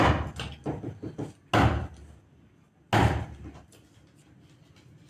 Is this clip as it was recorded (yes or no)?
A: yes